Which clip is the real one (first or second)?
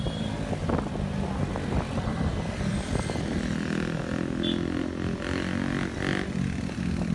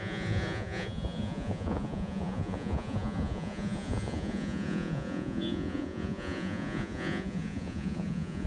first